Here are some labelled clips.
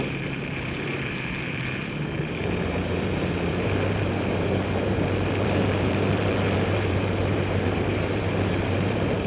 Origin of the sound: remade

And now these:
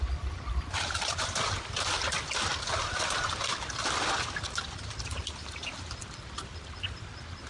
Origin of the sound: recorded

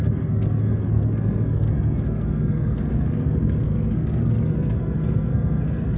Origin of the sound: remade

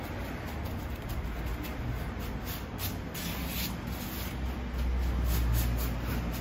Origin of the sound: recorded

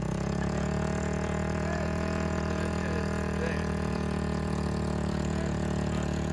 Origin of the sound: remade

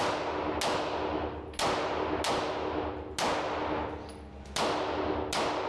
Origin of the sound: recorded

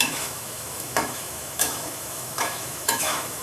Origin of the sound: remade